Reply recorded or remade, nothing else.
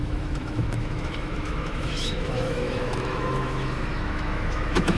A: remade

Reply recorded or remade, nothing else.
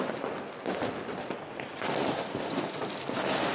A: recorded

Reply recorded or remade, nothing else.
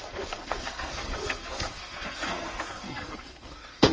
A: remade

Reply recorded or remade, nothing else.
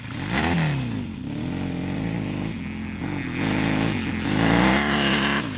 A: recorded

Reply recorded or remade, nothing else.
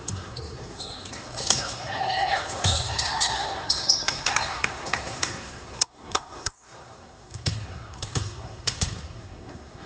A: remade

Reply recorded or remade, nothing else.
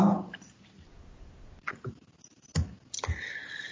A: recorded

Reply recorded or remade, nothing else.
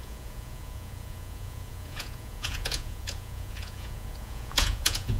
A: remade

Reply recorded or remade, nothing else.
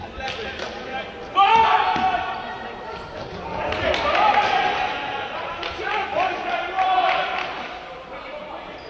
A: remade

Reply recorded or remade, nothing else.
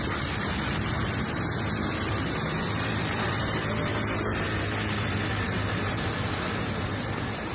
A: remade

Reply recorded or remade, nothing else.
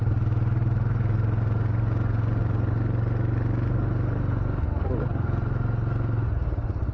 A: recorded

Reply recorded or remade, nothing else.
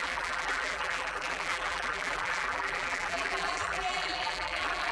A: remade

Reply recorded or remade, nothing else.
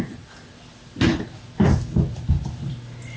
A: recorded